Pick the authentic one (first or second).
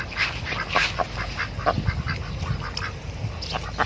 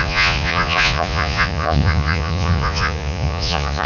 first